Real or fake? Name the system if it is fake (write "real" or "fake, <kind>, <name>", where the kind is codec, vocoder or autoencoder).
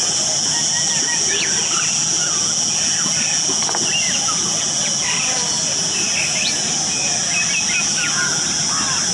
real